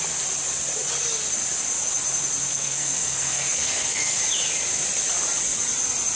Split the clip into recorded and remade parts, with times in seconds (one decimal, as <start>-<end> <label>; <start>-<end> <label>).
0.0-2.5 recorded; 2.5-4.2 remade; 4.2-6.1 recorded